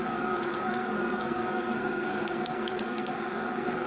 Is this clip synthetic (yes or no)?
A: yes